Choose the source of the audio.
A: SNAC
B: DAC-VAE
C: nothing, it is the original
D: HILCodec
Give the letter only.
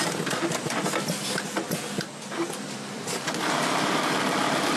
C